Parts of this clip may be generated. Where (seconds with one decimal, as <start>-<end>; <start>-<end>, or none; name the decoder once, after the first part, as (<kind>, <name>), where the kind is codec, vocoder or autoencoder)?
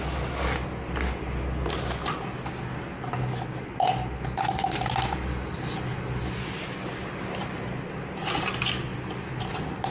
none